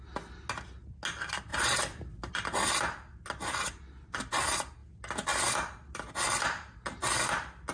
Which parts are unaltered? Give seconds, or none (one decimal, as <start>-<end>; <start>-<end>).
0.0-7.7